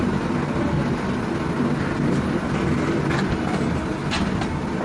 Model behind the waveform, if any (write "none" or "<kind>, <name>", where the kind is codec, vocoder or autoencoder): none